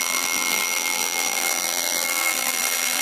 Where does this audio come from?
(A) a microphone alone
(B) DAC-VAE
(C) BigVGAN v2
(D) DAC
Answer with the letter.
C